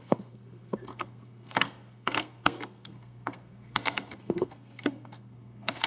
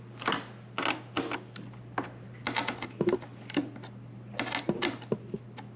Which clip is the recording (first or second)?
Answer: second